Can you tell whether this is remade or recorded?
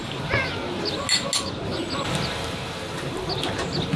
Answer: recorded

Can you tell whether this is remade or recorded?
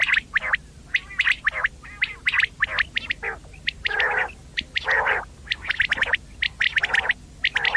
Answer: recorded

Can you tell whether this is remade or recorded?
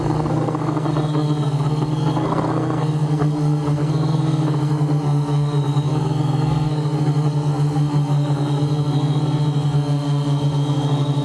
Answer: remade